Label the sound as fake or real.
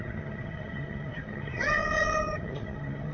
fake